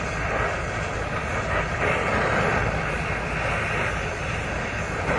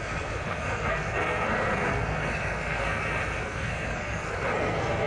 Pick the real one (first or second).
first